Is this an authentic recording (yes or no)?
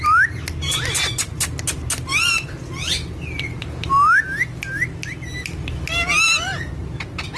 yes